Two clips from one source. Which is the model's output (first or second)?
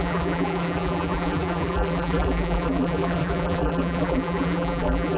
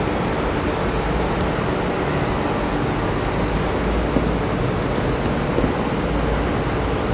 first